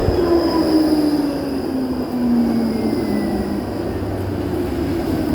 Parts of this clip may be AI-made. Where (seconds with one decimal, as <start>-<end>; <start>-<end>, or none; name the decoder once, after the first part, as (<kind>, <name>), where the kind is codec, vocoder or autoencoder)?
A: none

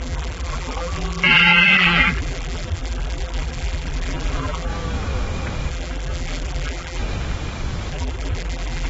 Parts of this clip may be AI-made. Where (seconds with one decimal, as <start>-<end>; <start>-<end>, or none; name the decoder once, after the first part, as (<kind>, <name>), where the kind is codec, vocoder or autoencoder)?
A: 0.0-4.7 (vocoder, BigVGAN v2); 5.7-7.0; 7.9-8.9

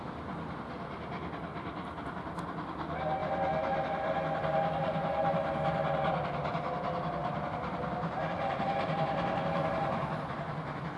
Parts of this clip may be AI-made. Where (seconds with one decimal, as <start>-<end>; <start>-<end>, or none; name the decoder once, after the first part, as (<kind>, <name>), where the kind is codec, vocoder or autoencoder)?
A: 1.5-2.0 (vocoder, BigVGAN v2); 7.2-9.9

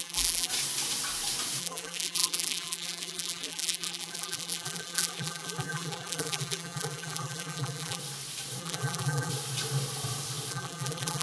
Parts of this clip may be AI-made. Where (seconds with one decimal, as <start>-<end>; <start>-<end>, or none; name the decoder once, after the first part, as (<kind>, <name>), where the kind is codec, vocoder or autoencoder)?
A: 0.0-0.5 (vocoder, BigVGAN v2); 1.6-8.0; 8.6-9.3; 10.5-11.2

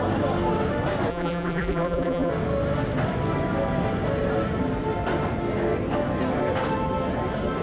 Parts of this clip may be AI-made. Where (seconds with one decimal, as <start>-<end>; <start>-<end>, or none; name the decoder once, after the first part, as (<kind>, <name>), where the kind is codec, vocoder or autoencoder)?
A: 1.1-2.3 (vocoder, BigVGAN v2)